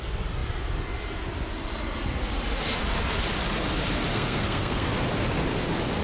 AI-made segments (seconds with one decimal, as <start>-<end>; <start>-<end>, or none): 4.1-4.9

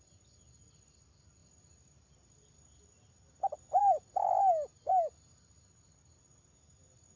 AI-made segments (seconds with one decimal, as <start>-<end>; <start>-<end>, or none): 1.4-3.8